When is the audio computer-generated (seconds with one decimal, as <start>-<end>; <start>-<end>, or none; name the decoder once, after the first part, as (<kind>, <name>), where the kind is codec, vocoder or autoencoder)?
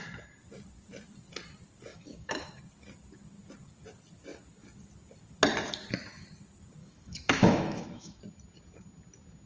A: 1.9-2.6 (autoencoder, DAC-VAE); 6.8-8.2